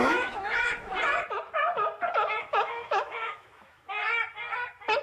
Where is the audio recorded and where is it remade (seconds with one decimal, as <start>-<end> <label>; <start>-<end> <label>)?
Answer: 0.0-0.9 remade; 0.9-2.4 recorded; 2.4-4.0 remade; 4.0-5.0 recorded